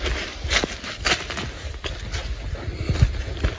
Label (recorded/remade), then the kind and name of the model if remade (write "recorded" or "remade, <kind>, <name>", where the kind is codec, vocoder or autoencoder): recorded